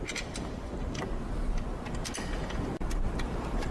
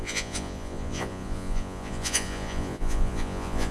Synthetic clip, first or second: second